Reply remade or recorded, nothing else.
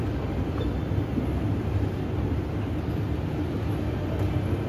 recorded